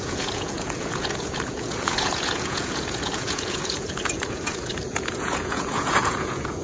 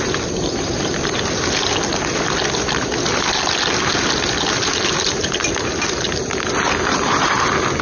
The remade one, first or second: first